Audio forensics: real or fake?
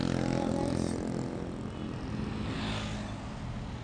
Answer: real